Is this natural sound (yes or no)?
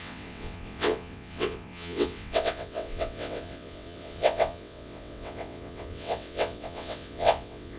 no